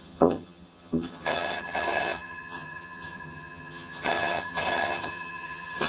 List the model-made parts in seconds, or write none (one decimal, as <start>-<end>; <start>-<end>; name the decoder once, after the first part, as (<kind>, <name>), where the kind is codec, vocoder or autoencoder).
0.0-5.9 (vocoder, HiFi-GAN)